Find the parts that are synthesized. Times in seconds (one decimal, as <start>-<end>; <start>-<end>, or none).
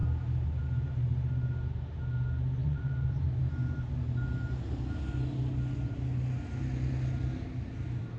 2.6-3.2